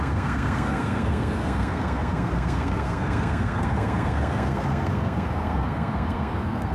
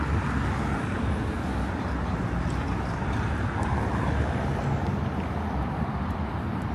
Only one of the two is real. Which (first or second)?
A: second